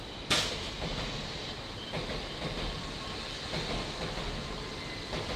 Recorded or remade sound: recorded